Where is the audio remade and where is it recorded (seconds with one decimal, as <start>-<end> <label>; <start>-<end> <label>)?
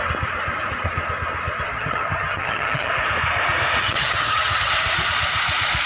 0.0-1.7 recorded; 1.7-2.9 remade; 2.9-3.8 recorded; 3.8-4.7 remade; 4.7-5.9 recorded